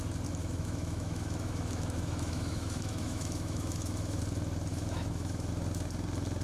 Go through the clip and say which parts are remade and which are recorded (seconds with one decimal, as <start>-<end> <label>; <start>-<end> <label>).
0.0-0.4 recorded; 0.4-4.2 remade; 4.2-4.7 recorded; 4.7-5.5 remade; 5.5-6.4 recorded